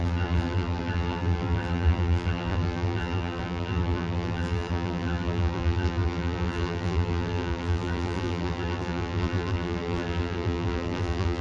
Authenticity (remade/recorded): remade